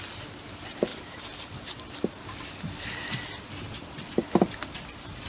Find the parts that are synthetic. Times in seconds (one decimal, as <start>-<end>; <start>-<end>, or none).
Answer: none